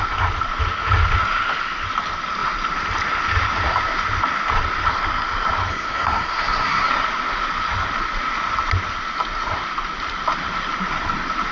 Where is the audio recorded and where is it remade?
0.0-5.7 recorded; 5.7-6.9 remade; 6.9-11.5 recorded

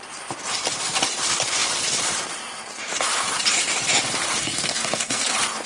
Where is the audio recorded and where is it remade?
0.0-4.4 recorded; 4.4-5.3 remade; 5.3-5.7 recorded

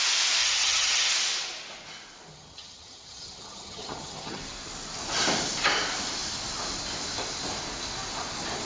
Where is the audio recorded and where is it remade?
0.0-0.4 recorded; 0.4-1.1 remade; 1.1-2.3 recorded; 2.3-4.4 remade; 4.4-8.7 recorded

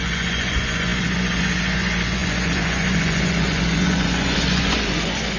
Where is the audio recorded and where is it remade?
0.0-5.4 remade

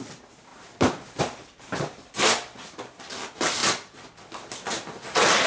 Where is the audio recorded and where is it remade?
0.0-5.5 recorded

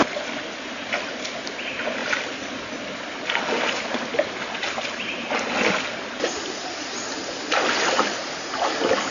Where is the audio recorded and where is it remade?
0.0-2.0 recorded; 2.0-3.9 remade; 3.9-9.1 recorded